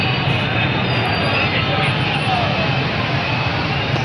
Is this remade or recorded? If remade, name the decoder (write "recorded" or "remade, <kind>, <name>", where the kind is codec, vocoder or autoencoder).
recorded